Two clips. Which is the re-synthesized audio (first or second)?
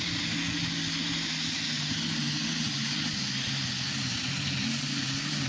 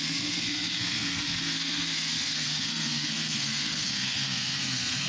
second